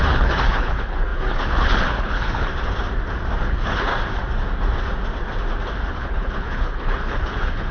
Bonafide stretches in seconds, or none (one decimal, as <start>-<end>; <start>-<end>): 2.5-3.4; 3.9-5.9